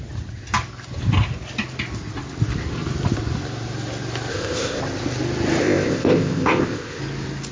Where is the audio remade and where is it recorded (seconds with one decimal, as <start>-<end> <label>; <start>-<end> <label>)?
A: 0.0-4.3 recorded; 4.3-4.8 remade; 4.8-5.6 recorded; 5.6-7.0 remade; 7.0-7.5 recorded

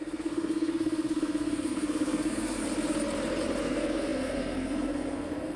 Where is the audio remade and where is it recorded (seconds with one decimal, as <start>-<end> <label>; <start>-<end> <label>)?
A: 0.0-2.6 remade; 2.6-3.6 recorded; 3.6-5.6 remade

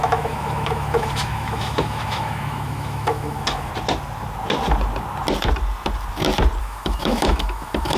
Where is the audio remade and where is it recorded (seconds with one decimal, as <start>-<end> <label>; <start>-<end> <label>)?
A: 0.0-3.7 remade; 3.7-6.6 recorded; 6.6-8.0 remade